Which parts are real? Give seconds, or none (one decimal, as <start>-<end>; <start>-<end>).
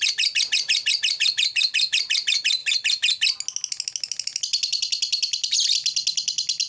2.6-6.7